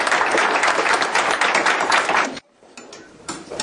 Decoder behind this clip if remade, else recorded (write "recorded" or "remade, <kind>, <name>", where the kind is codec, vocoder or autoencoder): remade, vocoder, BigVGAN v2